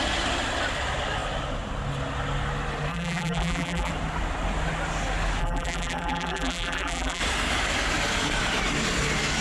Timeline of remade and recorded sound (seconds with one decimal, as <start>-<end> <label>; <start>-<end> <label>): 0.0-2.9 recorded; 2.9-3.9 remade; 3.9-5.4 recorded; 5.4-7.2 remade; 7.2-9.4 recorded